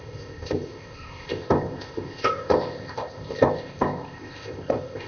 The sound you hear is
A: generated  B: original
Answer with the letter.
A